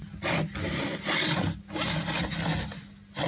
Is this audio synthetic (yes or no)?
no